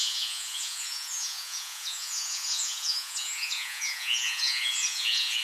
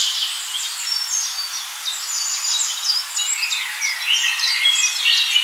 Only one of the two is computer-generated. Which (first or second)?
first